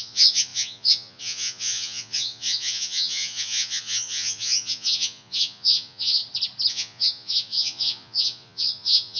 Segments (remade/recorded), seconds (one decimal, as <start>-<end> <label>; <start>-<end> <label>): 0.0-6.2 remade; 6.2-6.7 recorded; 6.7-9.2 remade

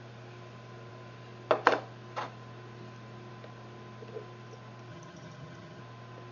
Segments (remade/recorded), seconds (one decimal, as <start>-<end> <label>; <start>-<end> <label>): 0.0-4.9 recorded; 4.9-5.8 remade; 5.8-6.3 recorded

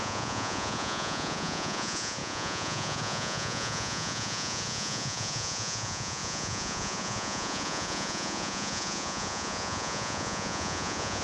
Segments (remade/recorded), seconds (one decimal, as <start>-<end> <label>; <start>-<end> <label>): 0.0-11.2 remade

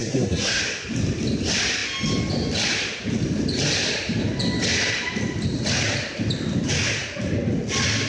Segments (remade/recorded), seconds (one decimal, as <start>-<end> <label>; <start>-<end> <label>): 0.0-0.6 remade; 0.6-8.1 recorded

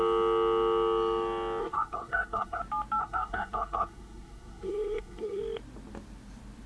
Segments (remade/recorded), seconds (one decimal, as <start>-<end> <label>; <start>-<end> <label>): 0.0-1.6 recorded; 1.6-2.6 remade; 2.6-3.0 recorded; 3.0-5.4 remade; 5.4-6.7 recorded

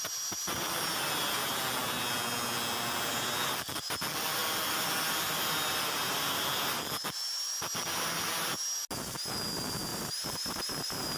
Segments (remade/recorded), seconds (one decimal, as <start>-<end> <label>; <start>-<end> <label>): 0.0-9.9 recorded; 9.9-11.2 remade